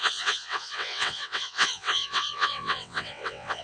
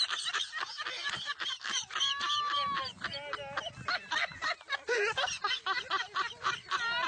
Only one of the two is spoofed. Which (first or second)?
first